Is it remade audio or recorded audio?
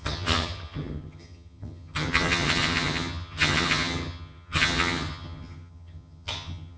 remade